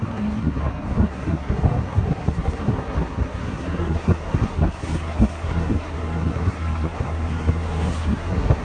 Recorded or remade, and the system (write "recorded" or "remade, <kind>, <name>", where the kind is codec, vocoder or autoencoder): remade, codec, SNAC